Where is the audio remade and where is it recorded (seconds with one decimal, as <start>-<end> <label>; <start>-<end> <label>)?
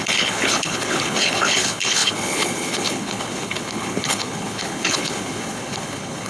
0.0-6.3 remade